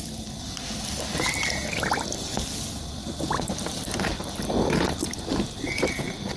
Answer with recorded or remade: recorded